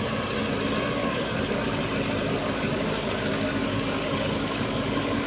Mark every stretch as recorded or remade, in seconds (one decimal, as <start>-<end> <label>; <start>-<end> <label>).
0.0-1.0 recorded; 1.0-1.8 remade; 1.8-2.4 recorded; 2.4-5.3 remade